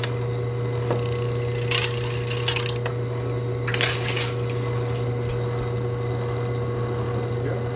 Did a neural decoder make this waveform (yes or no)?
no